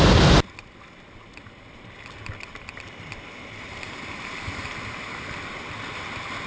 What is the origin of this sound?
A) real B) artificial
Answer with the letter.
A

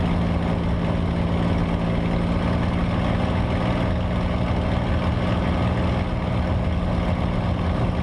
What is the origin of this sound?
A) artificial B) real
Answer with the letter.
B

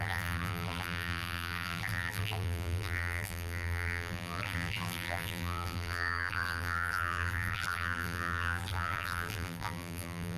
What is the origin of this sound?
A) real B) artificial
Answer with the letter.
B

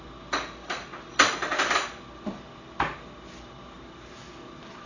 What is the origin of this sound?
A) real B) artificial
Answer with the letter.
A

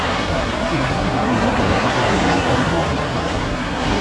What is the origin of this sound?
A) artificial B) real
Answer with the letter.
A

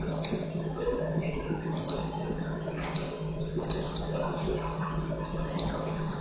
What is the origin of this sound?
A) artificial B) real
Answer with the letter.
A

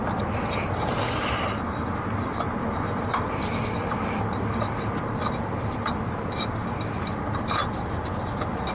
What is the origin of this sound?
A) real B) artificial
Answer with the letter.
A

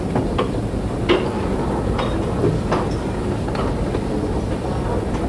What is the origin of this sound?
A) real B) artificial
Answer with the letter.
A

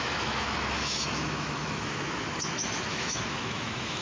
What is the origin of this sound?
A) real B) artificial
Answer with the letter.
B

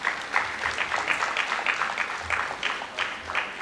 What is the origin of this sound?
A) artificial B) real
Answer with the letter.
B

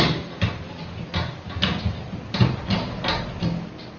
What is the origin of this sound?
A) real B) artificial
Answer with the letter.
A